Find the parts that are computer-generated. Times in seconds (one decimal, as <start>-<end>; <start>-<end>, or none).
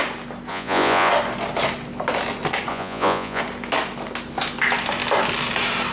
0.5-1.1; 2.7-3.4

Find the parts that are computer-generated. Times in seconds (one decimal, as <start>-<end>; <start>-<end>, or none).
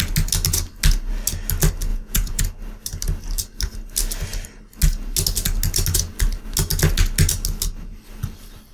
1.9-2.4